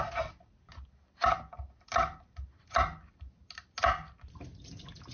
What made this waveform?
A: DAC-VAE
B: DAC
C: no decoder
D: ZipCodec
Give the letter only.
C